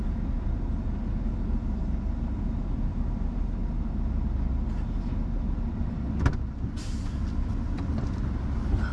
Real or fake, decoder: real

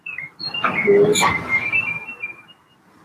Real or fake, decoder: real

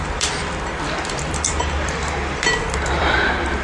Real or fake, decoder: fake, vocoder, BigVGAN v2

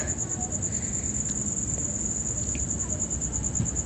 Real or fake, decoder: real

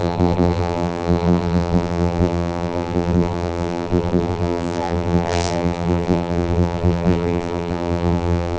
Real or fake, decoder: fake, vocoder, BigVGAN v2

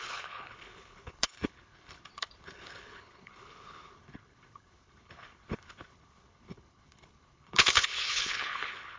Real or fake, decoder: fake, codec, HILCodec